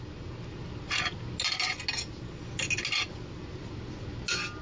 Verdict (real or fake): real